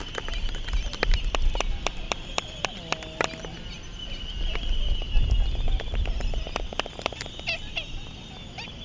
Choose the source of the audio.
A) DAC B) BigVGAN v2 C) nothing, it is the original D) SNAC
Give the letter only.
C